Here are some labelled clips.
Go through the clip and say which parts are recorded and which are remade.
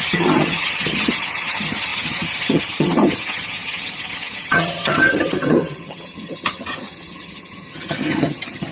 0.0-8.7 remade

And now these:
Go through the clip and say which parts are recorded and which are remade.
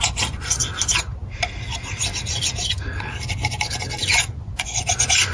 0.0-0.7 remade; 0.7-3.9 recorded; 3.9-5.3 remade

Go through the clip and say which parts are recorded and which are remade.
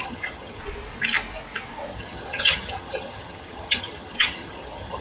0.0-0.6 remade; 0.6-1.9 recorded; 1.9-5.0 remade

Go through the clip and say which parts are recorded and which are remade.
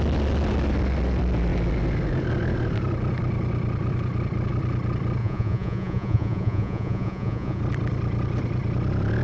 0.0-5.2 recorded; 5.2-7.6 remade; 7.6-9.2 recorded